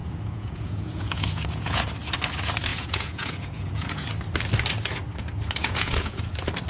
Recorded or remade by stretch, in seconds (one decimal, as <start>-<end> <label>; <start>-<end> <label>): 0.0-1.8 remade; 1.8-2.7 recorded; 2.7-4.1 remade; 4.1-5.6 recorded; 5.6-6.2 remade; 6.2-6.7 recorded